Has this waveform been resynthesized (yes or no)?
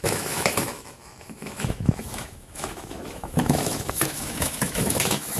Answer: yes